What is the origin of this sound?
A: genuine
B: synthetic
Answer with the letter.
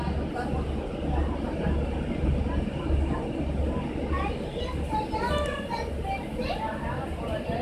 A